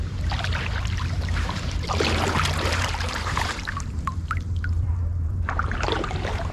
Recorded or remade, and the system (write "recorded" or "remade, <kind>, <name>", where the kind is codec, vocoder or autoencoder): remade, vocoder, BigVGAN v2